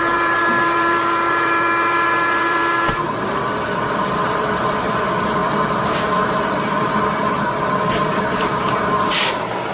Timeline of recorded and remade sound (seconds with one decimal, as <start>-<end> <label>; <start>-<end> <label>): 0.0-9.7 remade